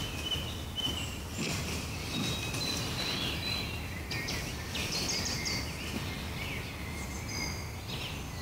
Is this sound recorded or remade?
recorded